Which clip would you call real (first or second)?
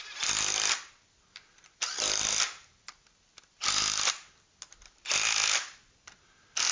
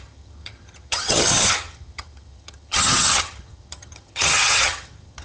first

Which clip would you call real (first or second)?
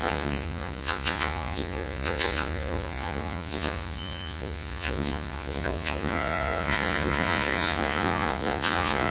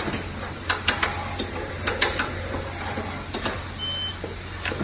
second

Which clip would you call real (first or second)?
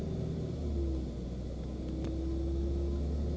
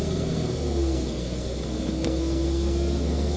first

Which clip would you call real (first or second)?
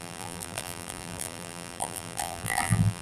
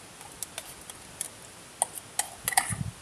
second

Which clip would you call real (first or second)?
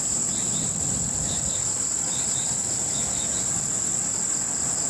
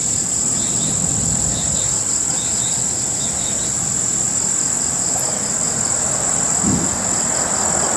second